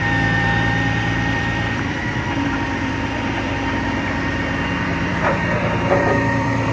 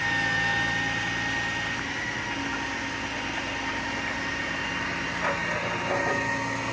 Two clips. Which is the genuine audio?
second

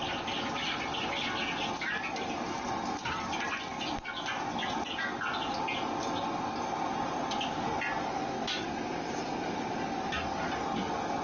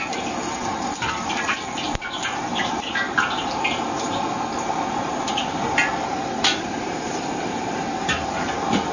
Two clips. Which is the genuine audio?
first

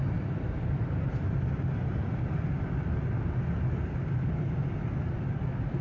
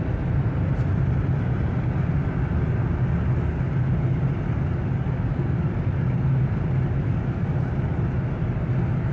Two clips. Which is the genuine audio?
second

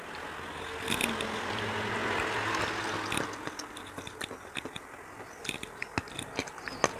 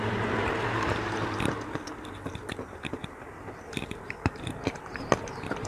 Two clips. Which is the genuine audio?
first